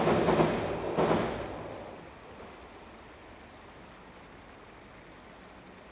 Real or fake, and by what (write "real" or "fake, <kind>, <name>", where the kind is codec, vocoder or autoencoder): real